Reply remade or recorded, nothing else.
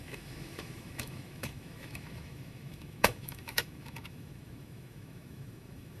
remade